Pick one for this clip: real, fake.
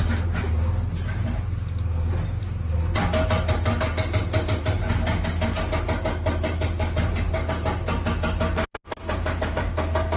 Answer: real